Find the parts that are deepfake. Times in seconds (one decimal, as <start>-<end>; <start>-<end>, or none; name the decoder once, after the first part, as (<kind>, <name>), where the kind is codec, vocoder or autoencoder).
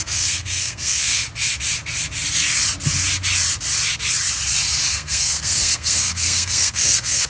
0.0-1.2 (codec, SNAC); 4.9-7.3